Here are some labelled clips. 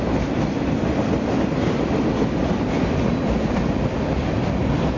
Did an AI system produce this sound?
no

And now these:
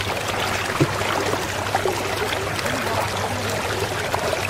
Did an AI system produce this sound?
no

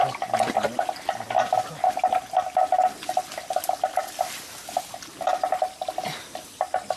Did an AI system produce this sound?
no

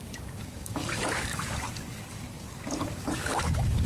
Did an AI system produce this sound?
yes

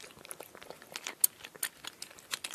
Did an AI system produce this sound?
no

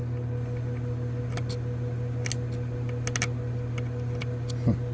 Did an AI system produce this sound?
no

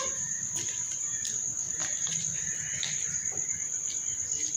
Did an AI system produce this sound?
yes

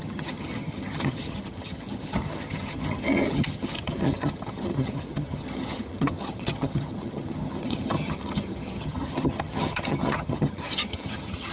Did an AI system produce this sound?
yes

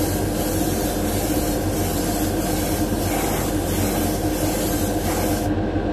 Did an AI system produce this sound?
no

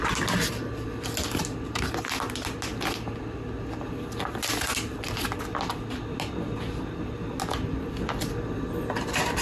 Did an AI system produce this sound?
no